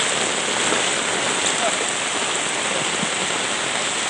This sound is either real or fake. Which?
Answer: real